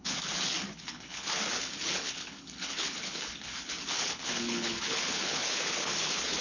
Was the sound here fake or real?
fake